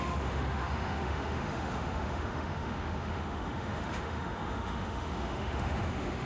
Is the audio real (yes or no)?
no